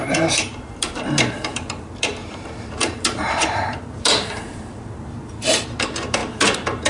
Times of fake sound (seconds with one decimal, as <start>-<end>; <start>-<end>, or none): 0.0-6.9